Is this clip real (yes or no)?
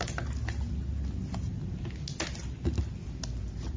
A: yes